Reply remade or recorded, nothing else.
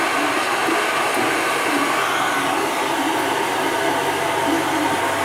recorded